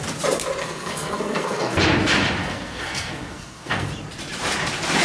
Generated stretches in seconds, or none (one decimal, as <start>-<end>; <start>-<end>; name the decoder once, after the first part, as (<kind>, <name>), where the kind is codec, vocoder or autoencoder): 0.6-1.8 (codec, SNAC); 2.4-3.9